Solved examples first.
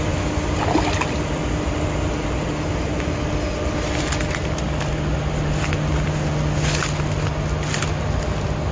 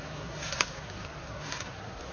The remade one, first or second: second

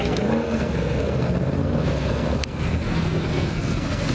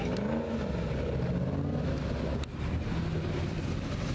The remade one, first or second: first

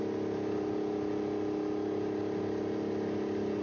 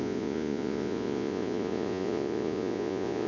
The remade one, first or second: second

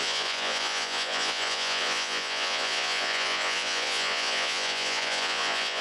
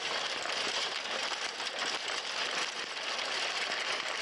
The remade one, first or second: first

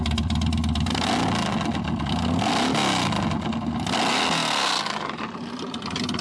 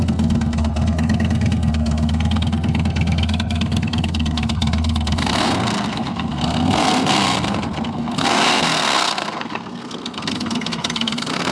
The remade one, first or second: second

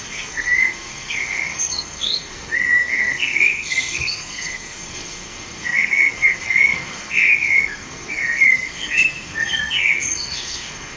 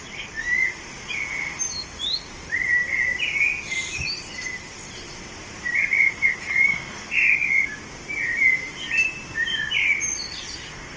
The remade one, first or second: first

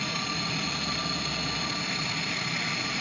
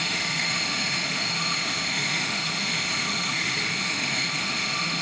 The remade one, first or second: second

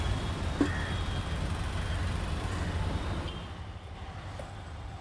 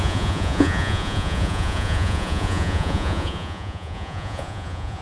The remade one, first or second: second